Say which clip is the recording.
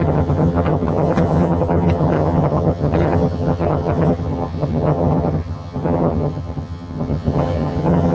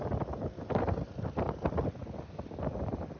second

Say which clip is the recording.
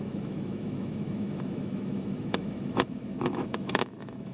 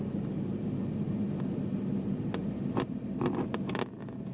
second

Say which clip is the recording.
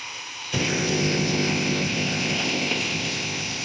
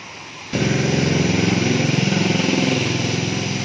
second